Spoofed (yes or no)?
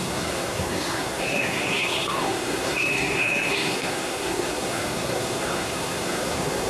yes